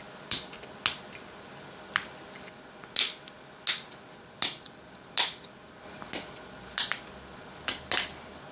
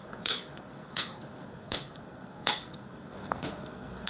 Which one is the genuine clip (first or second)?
first